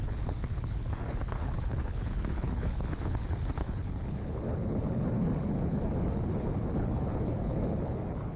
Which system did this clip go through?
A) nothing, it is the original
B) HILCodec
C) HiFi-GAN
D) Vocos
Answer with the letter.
B